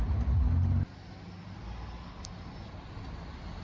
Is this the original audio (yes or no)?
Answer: yes